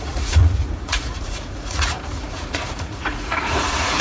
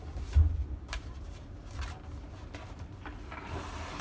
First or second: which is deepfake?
first